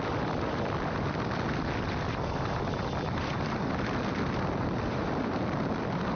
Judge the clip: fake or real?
fake